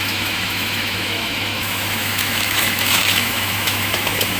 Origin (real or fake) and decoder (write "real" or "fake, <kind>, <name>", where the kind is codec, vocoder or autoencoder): fake, autoencoder, DAC-VAE